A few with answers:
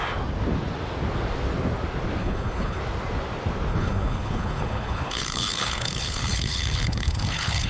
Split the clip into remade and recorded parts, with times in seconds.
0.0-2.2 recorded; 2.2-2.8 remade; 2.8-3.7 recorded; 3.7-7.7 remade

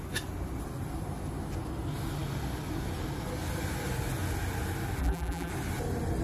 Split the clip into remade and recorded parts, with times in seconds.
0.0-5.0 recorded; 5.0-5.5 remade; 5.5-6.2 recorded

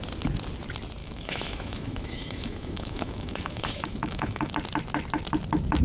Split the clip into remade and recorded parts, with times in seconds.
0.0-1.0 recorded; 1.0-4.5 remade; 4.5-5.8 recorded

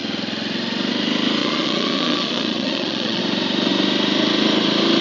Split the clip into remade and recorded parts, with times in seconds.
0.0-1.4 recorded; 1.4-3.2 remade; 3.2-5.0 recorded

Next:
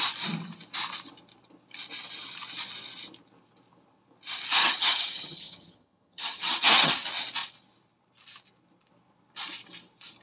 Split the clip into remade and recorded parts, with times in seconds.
0.0-4.6 recorded; 4.6-6.9 remade; 6.9-10.2 recorded

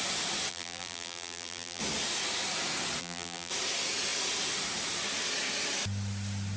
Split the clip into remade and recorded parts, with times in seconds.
0.0-0.5 recorded; 0.5-1.8 remade; 1.8-3.0 recorded; 3.0-3.5 remade; 3.5-6.6 recorded